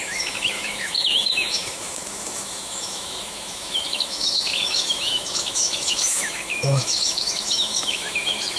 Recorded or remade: remade